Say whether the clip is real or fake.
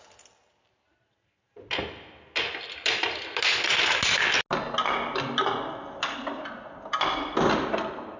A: real